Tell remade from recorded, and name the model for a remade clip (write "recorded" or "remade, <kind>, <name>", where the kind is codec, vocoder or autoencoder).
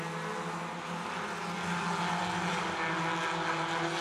recorded